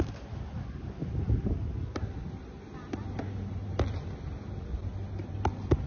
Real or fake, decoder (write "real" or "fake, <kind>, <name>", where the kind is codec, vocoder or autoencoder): real